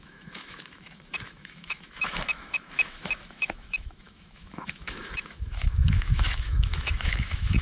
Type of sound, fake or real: fake